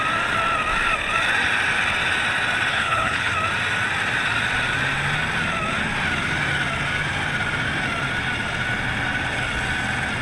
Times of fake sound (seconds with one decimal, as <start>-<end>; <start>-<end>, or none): 2.7-3.3